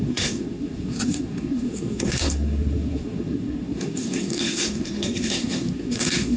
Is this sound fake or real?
fake